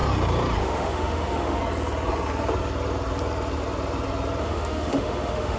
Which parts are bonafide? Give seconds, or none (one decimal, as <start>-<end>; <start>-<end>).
0.0-0.6; 1.6-4.4